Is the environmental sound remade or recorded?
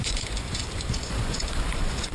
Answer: remade